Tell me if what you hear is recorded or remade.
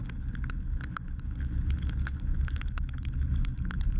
remade